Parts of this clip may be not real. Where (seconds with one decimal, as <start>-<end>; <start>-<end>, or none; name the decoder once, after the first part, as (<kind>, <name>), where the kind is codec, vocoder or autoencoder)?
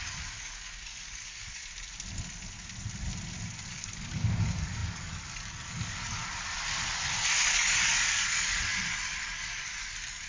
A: 0.0-1.6 (codec, DAC); 3.7-6.2; 7.3-10.3